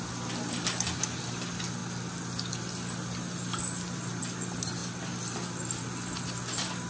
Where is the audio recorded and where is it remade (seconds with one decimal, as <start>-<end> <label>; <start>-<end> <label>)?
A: 0.0-6.9 recorded